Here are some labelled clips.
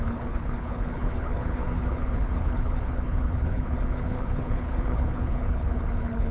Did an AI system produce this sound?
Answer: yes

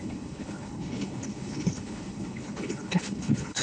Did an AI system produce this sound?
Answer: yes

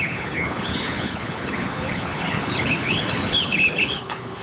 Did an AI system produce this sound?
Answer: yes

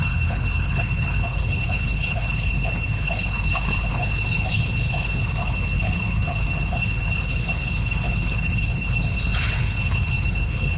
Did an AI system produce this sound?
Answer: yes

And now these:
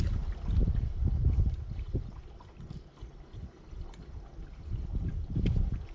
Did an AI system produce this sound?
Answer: no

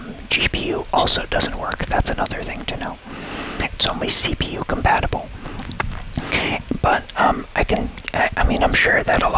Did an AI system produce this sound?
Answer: no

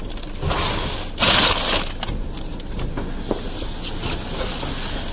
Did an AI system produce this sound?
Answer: no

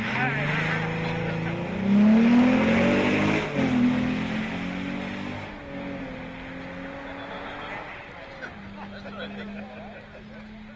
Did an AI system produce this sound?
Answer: no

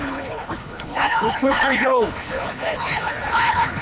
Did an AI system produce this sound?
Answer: yes